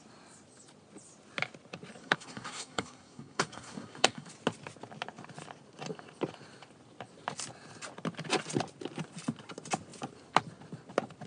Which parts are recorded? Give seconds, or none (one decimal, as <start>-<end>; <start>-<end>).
0.0-2.0; 4.3-11.3